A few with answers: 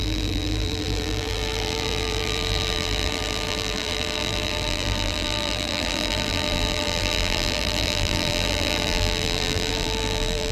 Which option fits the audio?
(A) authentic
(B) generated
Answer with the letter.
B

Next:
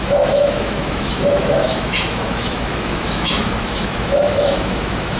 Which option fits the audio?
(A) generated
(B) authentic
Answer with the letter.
A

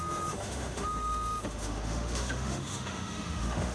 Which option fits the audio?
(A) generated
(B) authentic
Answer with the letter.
A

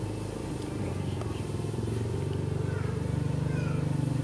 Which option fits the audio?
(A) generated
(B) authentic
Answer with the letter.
B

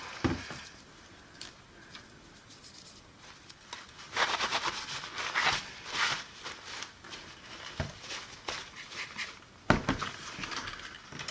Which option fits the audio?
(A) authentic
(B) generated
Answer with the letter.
A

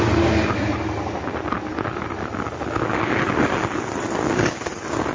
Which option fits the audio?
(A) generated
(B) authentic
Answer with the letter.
B